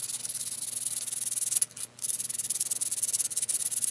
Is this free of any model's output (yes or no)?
yes